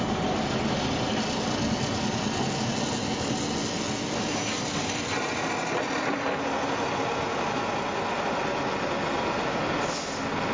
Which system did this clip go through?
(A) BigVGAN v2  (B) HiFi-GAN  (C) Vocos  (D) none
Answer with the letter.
D